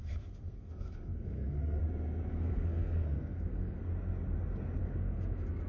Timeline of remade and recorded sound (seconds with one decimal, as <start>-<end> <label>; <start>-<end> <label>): 0.0-1.8 remade; 1.8-2.3 recorded; 2.3-3.9 remade; 3.9-4.8 recorded; 4.8-5.7 remade